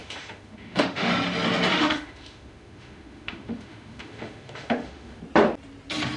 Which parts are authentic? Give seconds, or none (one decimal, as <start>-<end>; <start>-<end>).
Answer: 1.1-1.7; 5.2-6.2